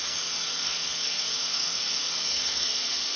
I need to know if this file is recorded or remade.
remade